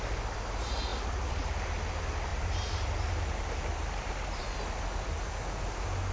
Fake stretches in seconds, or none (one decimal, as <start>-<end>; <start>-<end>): none